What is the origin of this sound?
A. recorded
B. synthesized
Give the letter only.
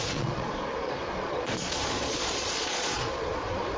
B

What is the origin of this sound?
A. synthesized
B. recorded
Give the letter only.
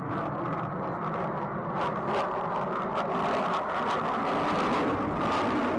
B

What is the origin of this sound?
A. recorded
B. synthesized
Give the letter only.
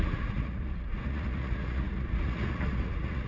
B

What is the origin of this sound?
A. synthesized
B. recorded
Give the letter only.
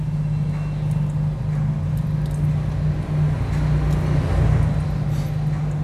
B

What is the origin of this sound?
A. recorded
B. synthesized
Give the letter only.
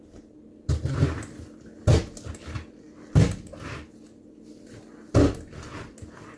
A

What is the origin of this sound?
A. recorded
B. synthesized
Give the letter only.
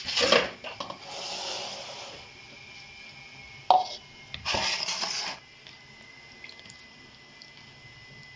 A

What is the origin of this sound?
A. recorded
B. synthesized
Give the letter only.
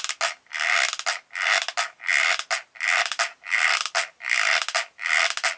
A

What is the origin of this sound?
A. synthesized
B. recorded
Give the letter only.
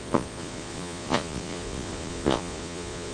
A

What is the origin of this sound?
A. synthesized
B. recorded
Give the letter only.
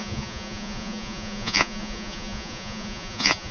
A